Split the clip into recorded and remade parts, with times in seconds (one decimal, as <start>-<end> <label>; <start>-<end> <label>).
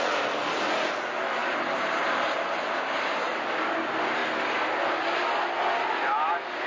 0.0-1.4 recorded; 1.4-3.4 remade; 3.4-6.7 recorded